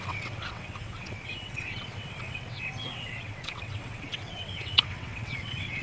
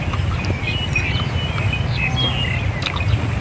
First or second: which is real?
second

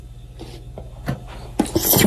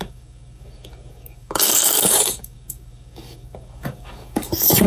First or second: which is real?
first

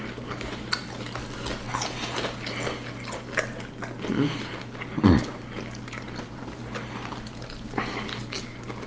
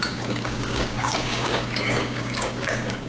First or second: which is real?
first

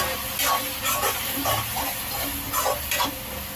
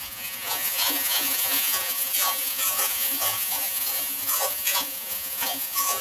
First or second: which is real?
first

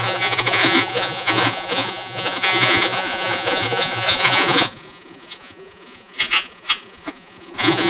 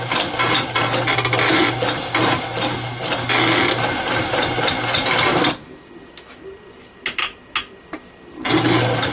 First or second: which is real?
second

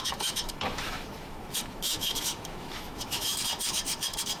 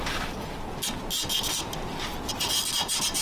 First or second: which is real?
second